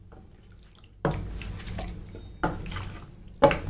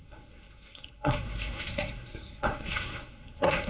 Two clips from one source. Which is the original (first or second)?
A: first